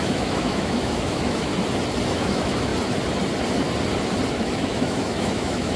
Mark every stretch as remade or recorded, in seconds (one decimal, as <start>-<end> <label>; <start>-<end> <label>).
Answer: 0.0-1.5 remade; 1.5-2.1 recorded; 2.1-2.7 remade; 2.7-4.3 recorded; 4.3-5.8 remade